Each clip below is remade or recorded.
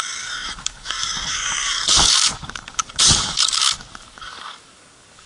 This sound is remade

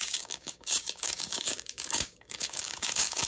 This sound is remade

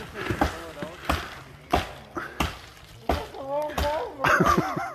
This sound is recorded